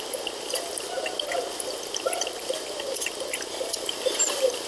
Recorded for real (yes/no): no